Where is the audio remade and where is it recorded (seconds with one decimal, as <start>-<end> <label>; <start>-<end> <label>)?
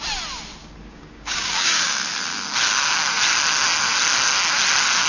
0.0-0.6 recorded; 0.6-1.9 remade; 1.9-5.1 recorded